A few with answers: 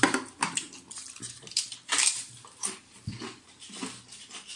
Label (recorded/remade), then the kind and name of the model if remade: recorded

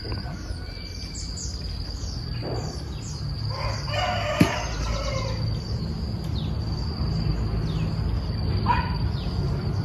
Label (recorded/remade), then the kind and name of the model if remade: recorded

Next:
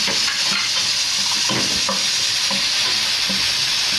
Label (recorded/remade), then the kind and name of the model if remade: recorded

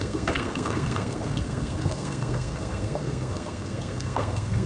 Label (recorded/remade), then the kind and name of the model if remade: remade, codec, SNAC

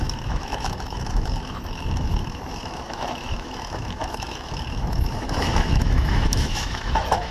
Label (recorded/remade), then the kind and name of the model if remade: remade, autoencoder, DAC-VAE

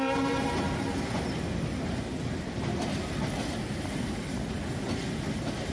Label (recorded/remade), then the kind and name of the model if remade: recorded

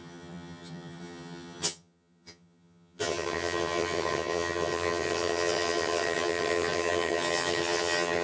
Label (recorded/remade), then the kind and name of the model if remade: remade, vocoder, HiFi-GAN